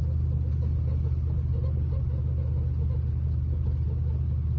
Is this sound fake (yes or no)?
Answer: no